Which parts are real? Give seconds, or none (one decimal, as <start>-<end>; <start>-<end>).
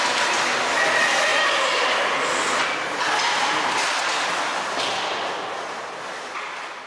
0.0-1.3; 2.0-6.9